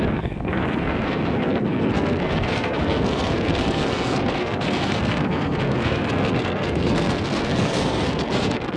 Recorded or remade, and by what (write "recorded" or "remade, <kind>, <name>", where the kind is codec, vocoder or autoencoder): remade, codec, SNAC